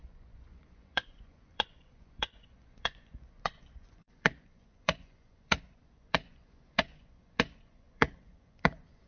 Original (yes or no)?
no